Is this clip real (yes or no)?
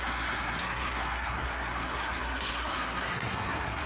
no